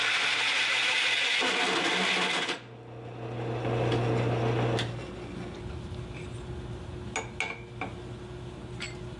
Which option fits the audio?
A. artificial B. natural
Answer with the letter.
B